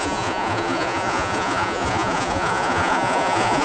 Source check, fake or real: fake